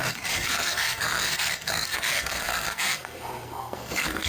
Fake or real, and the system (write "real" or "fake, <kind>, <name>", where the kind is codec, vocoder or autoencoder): fake, codec, SNAC